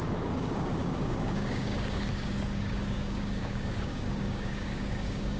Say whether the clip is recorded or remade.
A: remade